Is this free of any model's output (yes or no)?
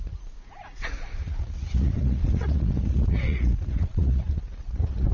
no